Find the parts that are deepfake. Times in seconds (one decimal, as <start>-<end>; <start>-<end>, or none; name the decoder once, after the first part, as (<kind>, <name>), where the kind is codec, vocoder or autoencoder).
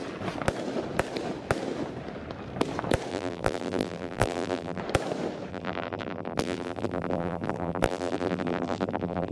3.1-4.8 (vocoder, BigVGAN v2); 5.5-9.3